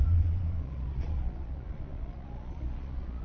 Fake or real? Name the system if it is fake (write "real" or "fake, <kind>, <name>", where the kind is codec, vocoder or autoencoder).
fake, vocoder, Vocos